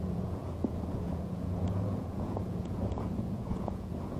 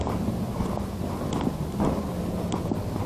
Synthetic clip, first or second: first